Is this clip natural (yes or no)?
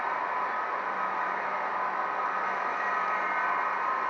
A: yes